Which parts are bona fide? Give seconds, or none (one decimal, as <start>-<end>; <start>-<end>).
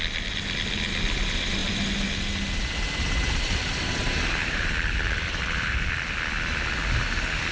0.0-4.4; 5.9-7.5